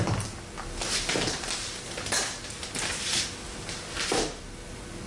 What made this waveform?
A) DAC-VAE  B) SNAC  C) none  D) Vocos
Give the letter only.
C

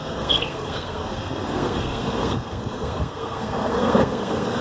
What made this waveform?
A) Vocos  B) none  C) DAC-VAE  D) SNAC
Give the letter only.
D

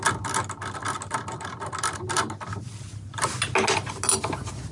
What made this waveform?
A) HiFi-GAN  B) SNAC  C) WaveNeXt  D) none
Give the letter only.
D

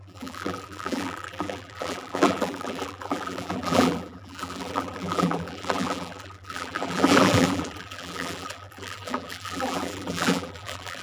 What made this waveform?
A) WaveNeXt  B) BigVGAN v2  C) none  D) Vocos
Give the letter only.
B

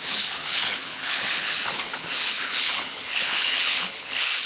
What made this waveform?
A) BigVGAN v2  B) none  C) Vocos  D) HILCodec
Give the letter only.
D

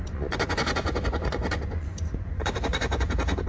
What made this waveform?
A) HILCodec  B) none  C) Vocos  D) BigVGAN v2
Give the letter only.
C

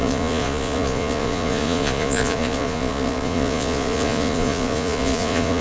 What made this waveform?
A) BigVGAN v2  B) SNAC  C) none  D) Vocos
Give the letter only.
D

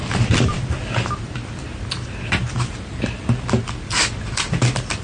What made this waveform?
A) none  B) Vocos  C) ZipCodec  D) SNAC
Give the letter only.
A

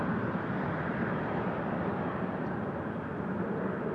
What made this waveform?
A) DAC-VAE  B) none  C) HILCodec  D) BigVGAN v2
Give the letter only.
D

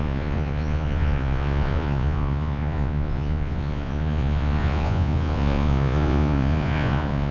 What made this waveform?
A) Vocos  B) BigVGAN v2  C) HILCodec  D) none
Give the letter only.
A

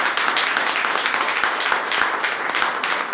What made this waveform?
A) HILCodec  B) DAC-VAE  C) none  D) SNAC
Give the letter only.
C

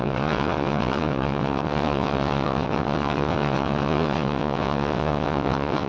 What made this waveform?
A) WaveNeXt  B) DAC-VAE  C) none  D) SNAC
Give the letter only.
A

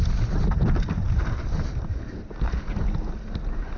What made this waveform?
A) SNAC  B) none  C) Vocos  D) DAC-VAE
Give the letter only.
B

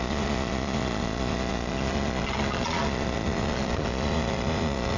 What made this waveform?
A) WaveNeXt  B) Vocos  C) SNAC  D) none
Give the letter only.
B